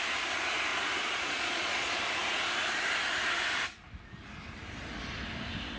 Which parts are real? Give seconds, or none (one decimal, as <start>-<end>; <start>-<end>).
0.0-0.7; 2.0-5.8